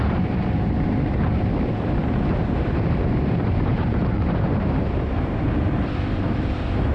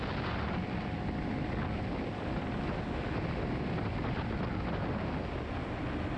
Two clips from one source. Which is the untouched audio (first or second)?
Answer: second